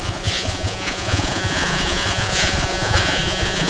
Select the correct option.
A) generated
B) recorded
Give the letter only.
A